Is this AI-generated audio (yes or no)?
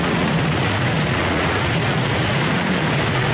yes